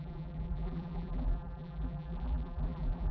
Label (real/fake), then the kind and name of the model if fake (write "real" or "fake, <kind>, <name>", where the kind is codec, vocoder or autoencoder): fake, vocoder, BigVGAN v2